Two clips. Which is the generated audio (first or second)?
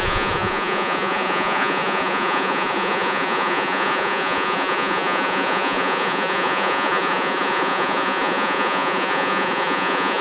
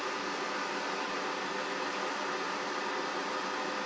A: first